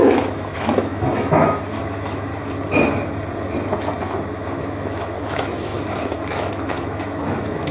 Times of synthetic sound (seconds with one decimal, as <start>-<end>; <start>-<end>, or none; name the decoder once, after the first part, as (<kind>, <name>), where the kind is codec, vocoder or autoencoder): 0.0-2.3 (autoencoder, DAC-VAE); 4.0-7.7